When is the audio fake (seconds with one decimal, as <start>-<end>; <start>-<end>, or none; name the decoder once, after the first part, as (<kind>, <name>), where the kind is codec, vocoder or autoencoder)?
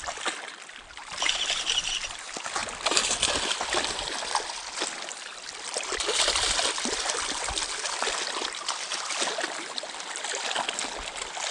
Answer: none